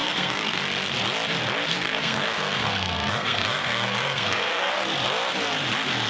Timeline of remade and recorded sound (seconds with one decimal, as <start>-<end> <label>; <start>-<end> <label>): 0.0-0.6 remade; 0.6-1.7 recorded; 1.7-4.7 remade; 4.7-6.1 recorded